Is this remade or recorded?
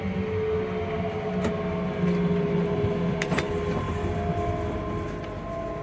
recorded